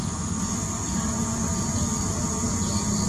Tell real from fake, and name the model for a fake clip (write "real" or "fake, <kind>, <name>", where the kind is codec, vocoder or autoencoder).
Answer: real